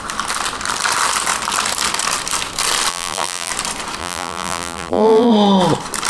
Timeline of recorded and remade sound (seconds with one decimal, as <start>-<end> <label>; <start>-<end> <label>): 0.0-2.9 recorded; 2.9-3.5 remade; 3.5-4.0 recorded; 4.0-5.3 remade; 5.3-6.1 recorded